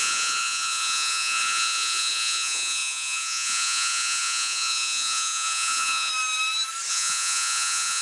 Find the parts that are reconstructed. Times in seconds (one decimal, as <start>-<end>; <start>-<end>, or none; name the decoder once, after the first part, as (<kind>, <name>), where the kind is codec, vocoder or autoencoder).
0.0-6.1 (vocoder, Vocos); 6.9-8.0